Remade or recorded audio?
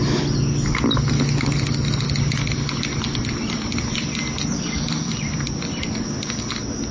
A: recorded